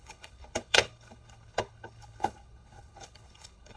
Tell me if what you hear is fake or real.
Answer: fake